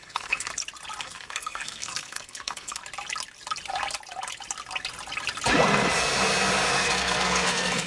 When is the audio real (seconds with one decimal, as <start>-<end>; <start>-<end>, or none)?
0.5-1.0; 2.8-6.7